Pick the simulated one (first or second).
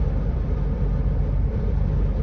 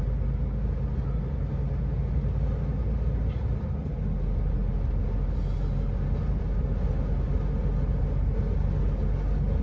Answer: first